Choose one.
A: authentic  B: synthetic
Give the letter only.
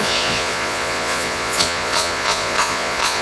B